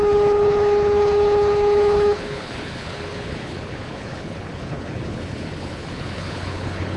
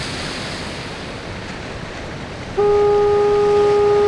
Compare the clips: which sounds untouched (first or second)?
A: second